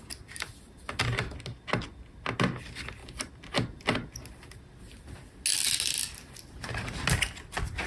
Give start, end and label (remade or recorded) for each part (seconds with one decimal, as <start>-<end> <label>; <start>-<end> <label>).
0.0-7.9 recorded